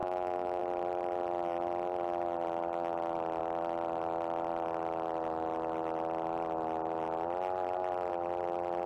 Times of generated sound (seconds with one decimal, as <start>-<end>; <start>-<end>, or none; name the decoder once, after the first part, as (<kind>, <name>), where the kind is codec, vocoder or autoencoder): 0.0-0.6 (autoencoder, DAC-VAE)